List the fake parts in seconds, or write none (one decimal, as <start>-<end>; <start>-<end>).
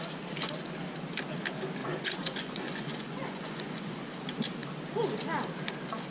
1.8-4.0